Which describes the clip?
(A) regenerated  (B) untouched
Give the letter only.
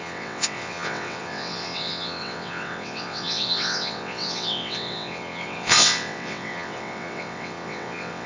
A